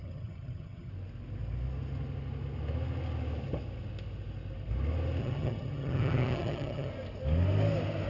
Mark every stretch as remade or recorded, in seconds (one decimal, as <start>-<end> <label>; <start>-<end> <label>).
0.0-0.9 remade; 0.9-5.2 recorded; 5.2-6.9 remade; 6.9-8.1 recorded